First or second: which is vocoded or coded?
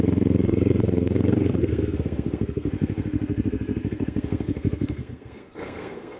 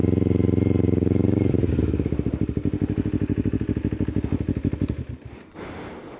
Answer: first